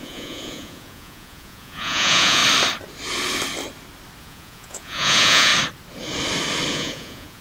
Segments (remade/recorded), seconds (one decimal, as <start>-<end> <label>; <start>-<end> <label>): 0.0-2.4 remade; 2.4-4.2 recorded; 4.2-5.5 remade; 5.5-6.7 recorded; 6.7-7.4 remade